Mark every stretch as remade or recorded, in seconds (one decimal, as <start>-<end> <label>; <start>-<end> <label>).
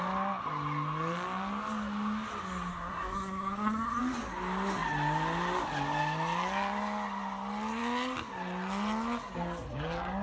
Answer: 0.0-2.7 recorded; 2.7-4.0 remade; 4.0-10.2 recorded